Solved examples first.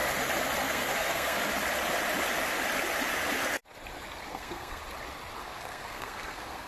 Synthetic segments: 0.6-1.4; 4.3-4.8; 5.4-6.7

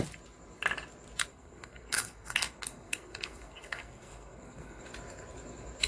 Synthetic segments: 1.3-4.8

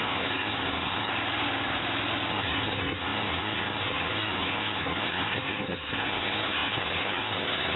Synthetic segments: 0.0-1.1; 2.3-7.8

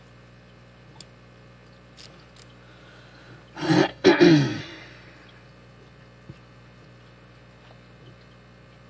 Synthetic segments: 3.9-4.6

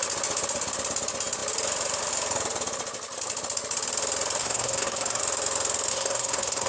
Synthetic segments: 4.4-5.2; 5.9-6.7

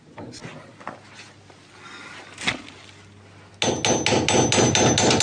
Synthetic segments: none